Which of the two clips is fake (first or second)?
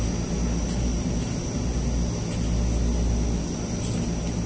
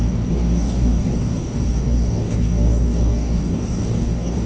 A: second